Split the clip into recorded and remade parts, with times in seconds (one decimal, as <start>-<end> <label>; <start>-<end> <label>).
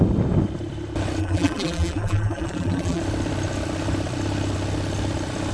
0.0-1.2 recorded; 1.2-3.0 remade; 3.0-5.5 recorded